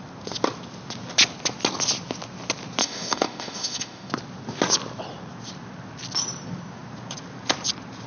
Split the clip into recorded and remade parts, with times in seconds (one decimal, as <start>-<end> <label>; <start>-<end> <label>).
0.0-2.8 recorded; 2.8-4.1 remade; 4.1-8.1 recorded